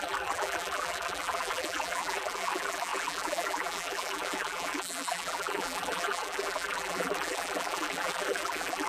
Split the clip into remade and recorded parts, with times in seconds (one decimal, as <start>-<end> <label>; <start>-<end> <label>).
0.0-8.9 remade